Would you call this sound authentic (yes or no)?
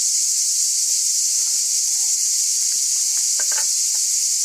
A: yes